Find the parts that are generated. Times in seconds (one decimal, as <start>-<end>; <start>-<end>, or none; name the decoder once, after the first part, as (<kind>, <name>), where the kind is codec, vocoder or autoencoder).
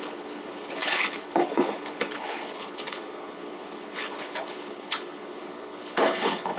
0.0-6.6 (codec, HILCodec)